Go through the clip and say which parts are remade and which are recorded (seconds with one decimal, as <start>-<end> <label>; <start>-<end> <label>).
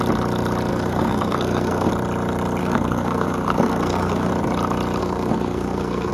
0.0-0.7 recorded; 0.7-1.9 remade; 1.9-2.6 recorded; 2.6-4.3 remade; 4.3-5.0 recorded; 5.0-6.1 remade